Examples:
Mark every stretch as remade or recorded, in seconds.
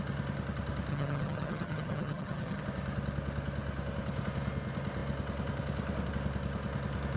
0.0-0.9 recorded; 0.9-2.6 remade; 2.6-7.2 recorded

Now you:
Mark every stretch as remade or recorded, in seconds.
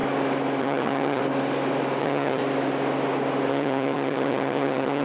0.0-0.6 recorded; 0.6-1.2 remade; 1.2-2.0 recorded; 2.0-2.4 remade; 2.4-3.5 recorded; 3.5-5.0 remade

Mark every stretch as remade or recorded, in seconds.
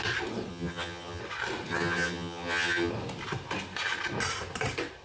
0.0-0.5 recorded; 0.5-1.2 remade; 1.2-1.7 recorded; 1.7-2.9 remade; 2.9-5.0 recorded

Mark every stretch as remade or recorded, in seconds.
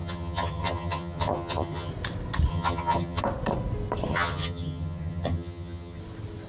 0.0-1.9 remade; 1.9-2.5 recorded; 2.5-3.2 remade; 3.2-4.1 recorded; 4.1-6.0 remade; 6.0-6.5 recorded